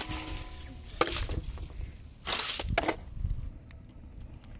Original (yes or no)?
yes